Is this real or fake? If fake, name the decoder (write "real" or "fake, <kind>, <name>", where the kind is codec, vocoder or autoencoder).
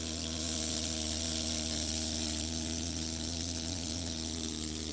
real